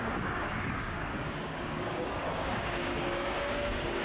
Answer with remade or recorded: remade